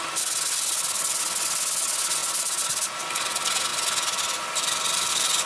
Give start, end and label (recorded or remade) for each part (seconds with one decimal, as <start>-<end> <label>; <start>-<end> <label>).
0.0-2.2 recorded; 2.2-3.0 remade; 3.0-3.7 recorded; 3.7-5.1 remade; 5.1-5.5 recorded